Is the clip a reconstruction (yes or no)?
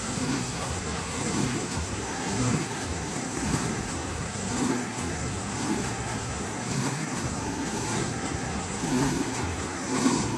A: yes